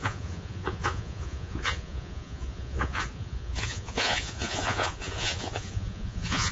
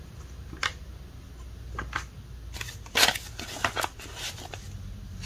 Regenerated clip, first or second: first